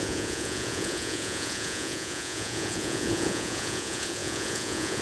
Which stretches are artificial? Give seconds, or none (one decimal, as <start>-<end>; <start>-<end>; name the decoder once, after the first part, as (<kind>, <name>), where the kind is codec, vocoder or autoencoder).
0.0-5.0 (vocoder, Vocos)